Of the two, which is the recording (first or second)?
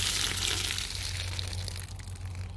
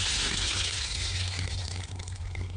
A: first